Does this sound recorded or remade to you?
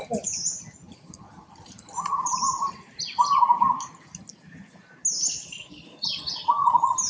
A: recorded